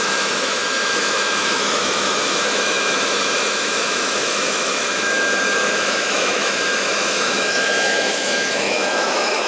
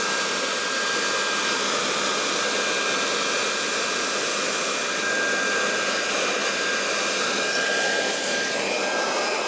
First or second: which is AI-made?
first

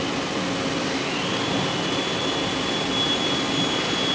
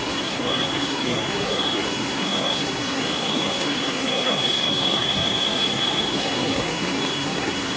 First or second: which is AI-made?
second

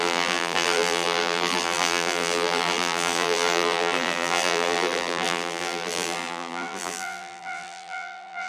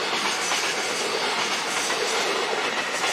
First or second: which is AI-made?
first